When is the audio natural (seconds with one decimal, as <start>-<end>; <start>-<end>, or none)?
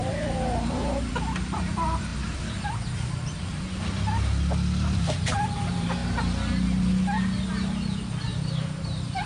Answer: 1.7-8.3